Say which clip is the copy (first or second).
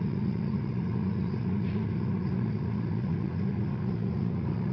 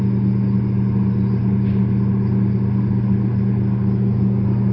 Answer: first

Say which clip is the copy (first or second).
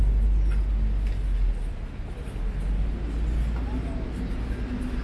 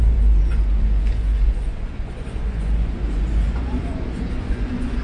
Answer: second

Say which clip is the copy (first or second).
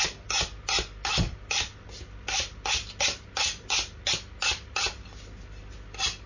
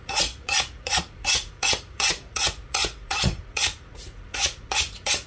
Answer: second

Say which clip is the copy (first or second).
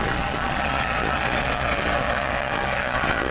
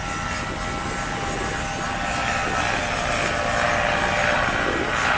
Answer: first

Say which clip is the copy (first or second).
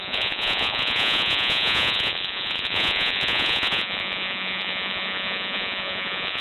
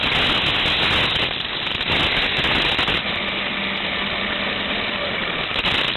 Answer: first